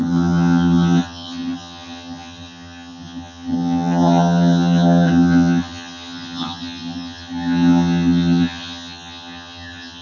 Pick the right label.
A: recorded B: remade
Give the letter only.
B